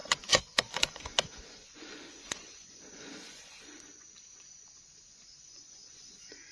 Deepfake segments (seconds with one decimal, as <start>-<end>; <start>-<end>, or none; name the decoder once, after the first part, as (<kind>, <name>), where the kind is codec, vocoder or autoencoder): 0.0-6.5 (vocoder, Vocos)